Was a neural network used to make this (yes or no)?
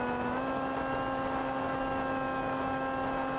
no